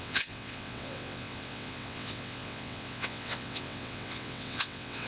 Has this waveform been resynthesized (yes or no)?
yes